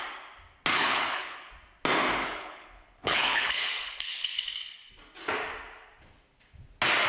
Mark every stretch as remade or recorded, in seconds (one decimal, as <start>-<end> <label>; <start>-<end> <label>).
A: 0.0-0.7 recorded; 0.7-1.5 remade; 1.5-2.2 recorded; 2.2-4.9 remade; 4.9-7.1 recorded